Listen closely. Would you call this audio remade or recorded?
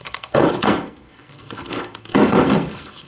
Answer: remade